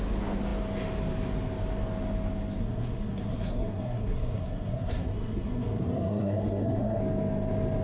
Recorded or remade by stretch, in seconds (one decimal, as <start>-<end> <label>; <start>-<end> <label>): 0.0-2.6 recorded; 2.6-7.0 remade; 7.0-7.8 recorded